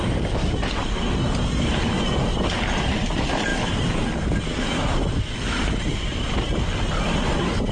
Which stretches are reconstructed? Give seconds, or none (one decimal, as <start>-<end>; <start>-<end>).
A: none